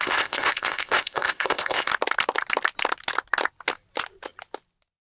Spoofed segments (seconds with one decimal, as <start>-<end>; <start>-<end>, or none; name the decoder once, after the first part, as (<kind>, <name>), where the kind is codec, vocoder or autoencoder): 0.0-1.9 (codec, ZipCodec)